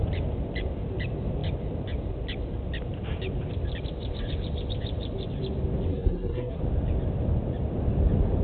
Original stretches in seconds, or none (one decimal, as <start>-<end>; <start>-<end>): 0.0-5.9; 6.6-8.4

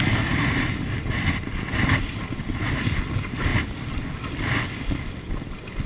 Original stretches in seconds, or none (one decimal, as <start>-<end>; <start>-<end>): 0.0-5.9